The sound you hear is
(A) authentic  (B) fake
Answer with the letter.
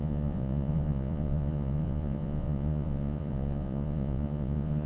B